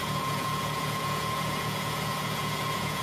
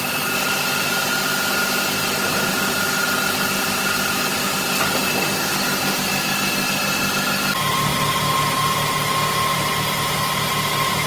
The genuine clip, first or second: second